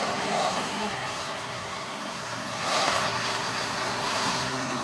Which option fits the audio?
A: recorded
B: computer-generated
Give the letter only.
B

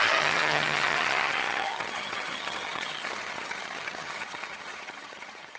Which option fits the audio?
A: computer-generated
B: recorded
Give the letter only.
A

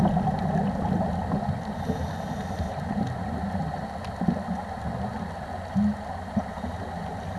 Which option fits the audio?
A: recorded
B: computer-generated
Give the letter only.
A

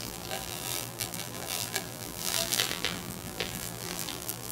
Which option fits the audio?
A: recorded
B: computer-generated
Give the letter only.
B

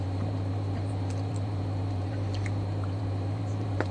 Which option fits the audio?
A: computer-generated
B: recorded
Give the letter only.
A